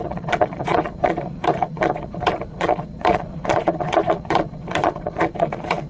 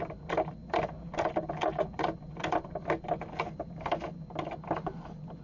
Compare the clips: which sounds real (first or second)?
second